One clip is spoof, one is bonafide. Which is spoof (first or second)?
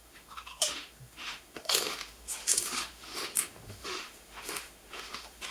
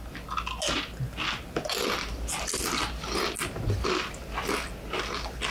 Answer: first